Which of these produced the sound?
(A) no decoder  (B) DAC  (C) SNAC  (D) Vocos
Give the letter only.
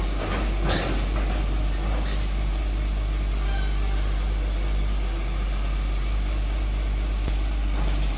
A